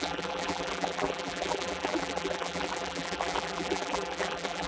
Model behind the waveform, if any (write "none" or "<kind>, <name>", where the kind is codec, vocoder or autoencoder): vocoder, BigVGAN v2